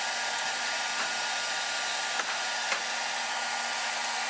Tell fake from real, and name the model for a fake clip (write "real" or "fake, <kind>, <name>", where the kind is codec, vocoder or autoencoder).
real